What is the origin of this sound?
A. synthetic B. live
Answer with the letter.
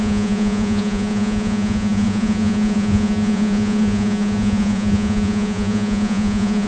A